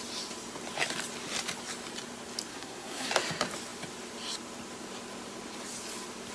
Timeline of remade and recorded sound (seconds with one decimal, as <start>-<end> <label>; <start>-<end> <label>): 0.0-2.5 recorded; 2.5-3.1 remade; 3.1-6.3 recorded